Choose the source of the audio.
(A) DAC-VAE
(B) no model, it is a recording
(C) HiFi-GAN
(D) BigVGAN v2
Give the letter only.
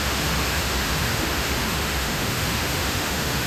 A